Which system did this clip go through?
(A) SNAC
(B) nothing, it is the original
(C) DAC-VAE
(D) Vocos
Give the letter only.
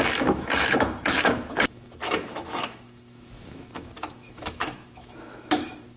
C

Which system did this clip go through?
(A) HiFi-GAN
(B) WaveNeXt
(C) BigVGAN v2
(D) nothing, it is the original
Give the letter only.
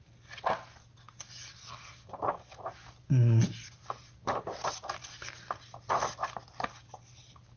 D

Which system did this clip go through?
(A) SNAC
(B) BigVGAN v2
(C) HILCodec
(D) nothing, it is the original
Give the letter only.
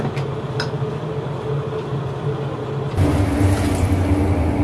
D